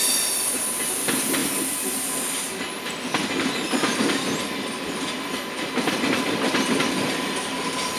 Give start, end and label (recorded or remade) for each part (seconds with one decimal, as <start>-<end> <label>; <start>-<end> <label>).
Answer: 0.0-8.0 recorded